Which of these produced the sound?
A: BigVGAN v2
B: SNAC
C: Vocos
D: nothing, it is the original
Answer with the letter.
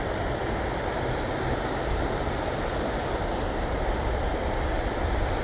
D